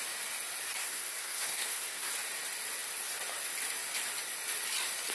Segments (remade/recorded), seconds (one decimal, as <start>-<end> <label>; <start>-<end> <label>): 0.0-0.8 recorded; 0.8-2.1 remade; 2.1-5.1 recorded